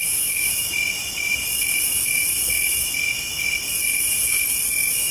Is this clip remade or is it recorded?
remade